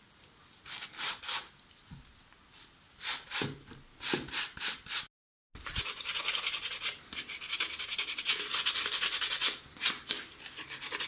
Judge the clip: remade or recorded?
recorded